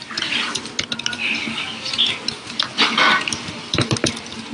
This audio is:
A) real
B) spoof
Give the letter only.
A